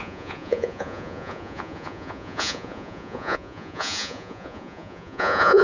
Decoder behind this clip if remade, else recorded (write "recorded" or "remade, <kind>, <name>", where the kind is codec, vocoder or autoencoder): remade, vocoder, Vocos